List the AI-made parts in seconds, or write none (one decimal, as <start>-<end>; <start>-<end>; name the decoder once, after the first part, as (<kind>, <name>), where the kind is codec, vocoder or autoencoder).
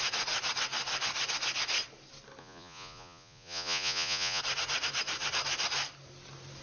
2.4-4.4 (vocoder, Vocos)